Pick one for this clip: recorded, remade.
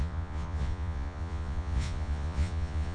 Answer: remade